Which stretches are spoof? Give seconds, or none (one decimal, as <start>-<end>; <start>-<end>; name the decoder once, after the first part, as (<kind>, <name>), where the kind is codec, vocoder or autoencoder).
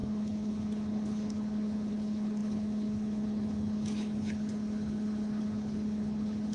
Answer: 0.0-6.5 (codec, HILCodec)